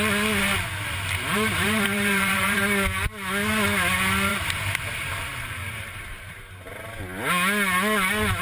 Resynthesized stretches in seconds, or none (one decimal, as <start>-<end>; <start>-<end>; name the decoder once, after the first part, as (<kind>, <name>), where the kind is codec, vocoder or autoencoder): 1.3-2.6 (vocoder, BigVGAN v2); 4.3-6.7